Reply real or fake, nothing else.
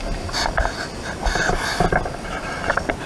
real